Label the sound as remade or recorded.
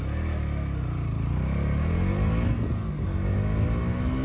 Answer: recorded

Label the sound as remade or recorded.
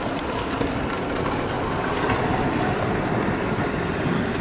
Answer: remade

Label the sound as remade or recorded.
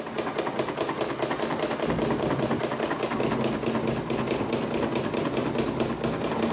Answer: recorded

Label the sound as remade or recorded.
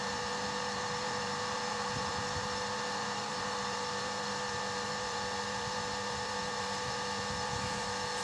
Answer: remade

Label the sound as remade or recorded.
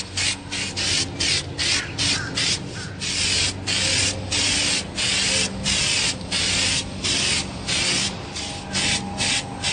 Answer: recorded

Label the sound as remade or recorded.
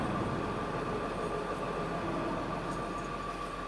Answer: recorded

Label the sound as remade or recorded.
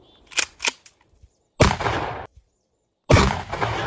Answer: recorded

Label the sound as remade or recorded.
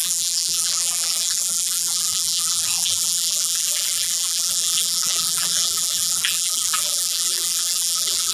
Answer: remade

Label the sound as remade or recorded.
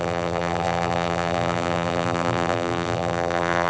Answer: remade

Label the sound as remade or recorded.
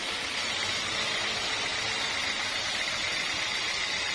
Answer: recorded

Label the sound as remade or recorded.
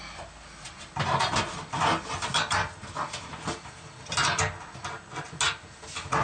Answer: recorded